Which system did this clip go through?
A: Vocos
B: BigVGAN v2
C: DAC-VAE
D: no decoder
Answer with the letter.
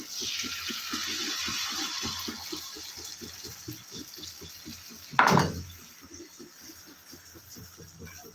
D